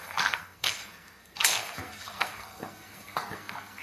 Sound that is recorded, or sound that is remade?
remade